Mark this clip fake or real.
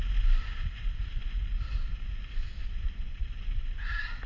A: real